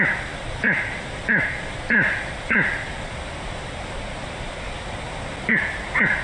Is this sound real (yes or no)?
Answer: yes